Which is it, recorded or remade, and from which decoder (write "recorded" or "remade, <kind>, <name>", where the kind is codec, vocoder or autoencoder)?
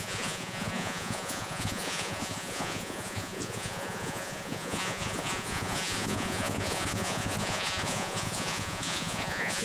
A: remade, vocoder, Vocos